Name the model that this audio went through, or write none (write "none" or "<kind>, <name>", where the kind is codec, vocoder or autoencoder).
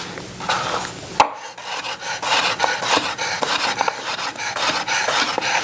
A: none